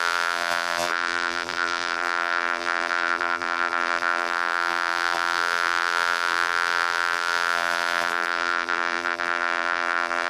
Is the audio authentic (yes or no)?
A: no